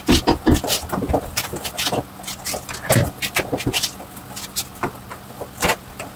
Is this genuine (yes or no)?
yes